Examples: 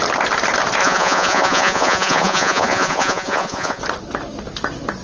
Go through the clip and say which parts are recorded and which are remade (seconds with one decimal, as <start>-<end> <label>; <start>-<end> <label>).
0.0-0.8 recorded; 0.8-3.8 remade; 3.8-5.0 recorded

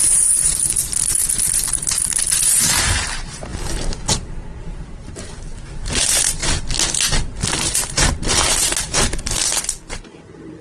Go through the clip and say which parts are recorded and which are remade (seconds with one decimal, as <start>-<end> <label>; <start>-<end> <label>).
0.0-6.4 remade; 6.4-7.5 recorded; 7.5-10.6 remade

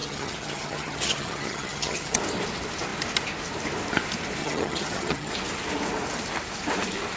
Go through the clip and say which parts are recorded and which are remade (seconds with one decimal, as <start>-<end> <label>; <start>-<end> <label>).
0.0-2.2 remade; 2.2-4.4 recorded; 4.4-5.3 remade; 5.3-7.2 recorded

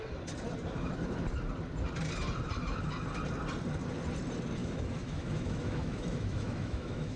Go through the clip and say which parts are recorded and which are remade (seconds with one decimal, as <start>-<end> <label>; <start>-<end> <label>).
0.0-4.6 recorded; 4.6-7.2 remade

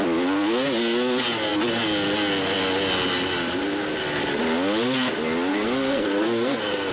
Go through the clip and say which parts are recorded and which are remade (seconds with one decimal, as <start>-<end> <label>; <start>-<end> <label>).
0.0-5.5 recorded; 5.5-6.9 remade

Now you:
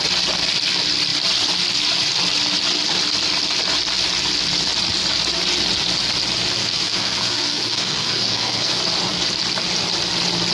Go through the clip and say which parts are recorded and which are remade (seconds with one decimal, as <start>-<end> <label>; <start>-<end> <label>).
0.0-6.6 recorded; 6.6-8.8 remade; 8.8-10.5 recorded

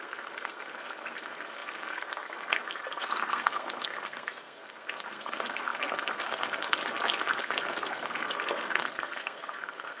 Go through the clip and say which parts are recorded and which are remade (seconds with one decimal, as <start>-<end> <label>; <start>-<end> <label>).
0.0-6.8 remade; 6.8-7.4 recorded; 7.4-10.0 remade

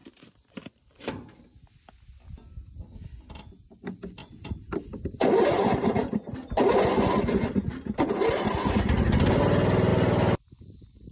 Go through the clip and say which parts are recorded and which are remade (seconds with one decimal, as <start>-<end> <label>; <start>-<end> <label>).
0.0-1.2 remade; 1.2-4.2 recorded; 4.2-8.7 remade; 8.7-11.1 recorded